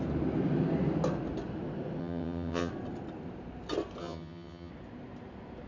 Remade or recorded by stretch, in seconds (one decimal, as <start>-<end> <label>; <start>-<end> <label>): 0.0-2.0 recorded; 2.0-2.7 remade; 2.7-4.0 recorded; 4.0-4.7 remade; 4.7-5.7 recorded